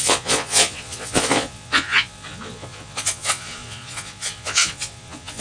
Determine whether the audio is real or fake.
fake